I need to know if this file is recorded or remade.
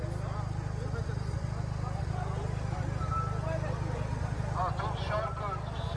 recorded